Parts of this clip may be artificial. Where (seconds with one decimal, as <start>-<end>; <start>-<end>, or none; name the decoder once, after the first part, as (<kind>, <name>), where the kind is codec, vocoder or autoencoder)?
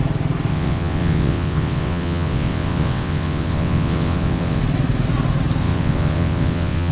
0.5-4.6 (vocoder, WaveNeXt); 5.6-6.9